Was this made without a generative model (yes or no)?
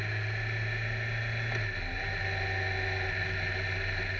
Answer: yes